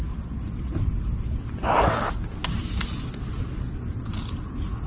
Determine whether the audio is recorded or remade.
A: recorded